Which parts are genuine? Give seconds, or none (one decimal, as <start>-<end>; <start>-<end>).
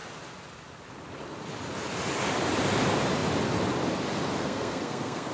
0.0-4.4